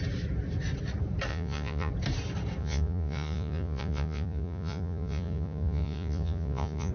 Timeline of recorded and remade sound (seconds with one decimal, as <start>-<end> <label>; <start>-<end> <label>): 0.0-1.3 recorded; 1.3-1.9 remade; 1.9-2.6 recorded; 2.6-6.9 remade